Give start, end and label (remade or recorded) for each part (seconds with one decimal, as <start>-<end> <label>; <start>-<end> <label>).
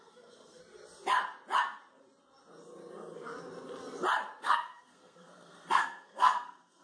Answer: 0.0-0.6 remade; 0.6-4.4 recorded; 4.4-6.8 remade